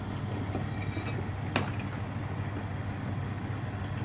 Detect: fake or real real